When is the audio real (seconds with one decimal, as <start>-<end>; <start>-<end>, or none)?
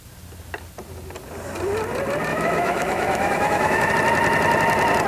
0.0-2.3; 3.9-5.1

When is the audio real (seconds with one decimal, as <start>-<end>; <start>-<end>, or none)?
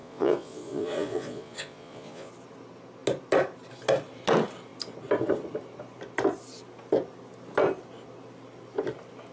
2.3-9.3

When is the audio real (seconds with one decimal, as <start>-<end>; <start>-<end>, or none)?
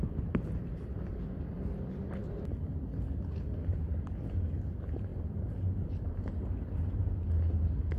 0.0-8.0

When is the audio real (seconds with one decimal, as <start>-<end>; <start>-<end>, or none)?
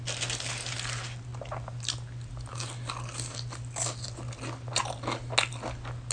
0.0-6.1